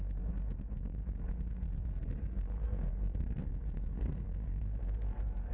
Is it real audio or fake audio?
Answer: fake